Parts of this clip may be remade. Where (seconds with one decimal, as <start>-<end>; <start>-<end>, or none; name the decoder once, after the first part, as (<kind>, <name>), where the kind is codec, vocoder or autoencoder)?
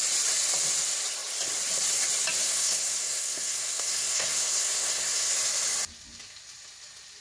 2.4-5.3 (codec, SNAC)